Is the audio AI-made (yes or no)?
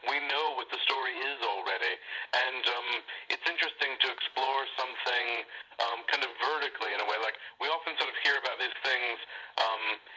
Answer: yes